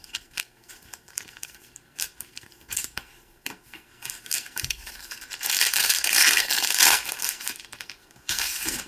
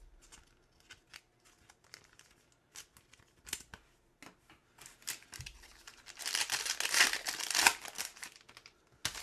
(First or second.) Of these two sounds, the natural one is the second